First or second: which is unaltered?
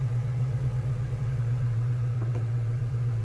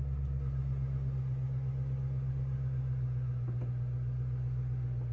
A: second